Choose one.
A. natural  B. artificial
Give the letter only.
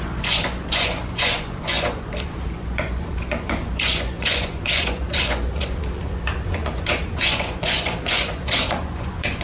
B